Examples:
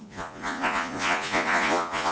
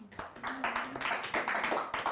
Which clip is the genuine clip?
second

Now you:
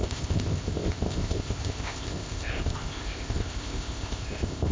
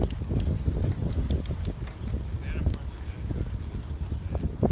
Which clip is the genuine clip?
second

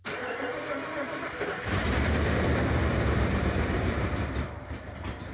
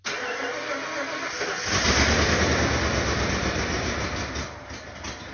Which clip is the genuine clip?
second